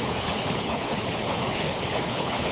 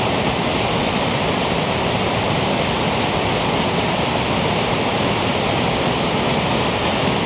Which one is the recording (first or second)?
second